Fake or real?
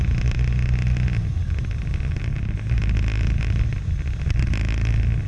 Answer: real